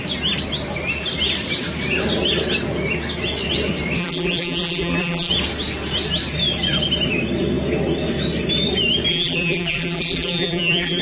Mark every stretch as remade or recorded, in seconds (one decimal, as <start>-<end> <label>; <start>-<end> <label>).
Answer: 0.0-4.0 recorded; 4.0-5.3 remade; 5.3-9.1 recorded; 9.1-11.0 remade